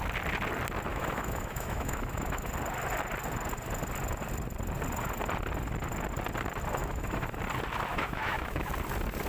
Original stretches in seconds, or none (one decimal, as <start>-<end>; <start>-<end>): 0.0-0.9; 2.5-6.8; 7.4-7.9; 8.7-9.3